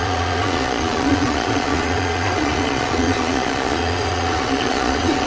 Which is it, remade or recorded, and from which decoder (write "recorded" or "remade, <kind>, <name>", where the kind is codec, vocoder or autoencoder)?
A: remade, vocoder, Vocos